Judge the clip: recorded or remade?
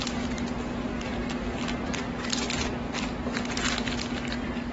recorded